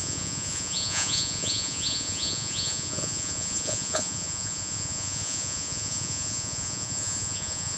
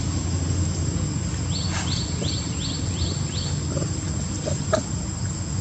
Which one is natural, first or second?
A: second